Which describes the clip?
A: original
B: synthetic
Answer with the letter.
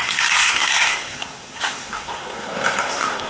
B